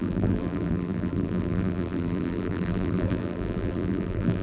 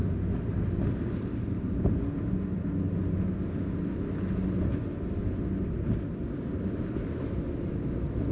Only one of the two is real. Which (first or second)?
second